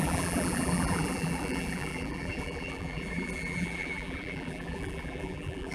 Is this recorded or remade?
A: remade